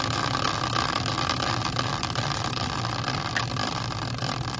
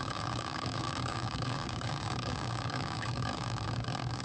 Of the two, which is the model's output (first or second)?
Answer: second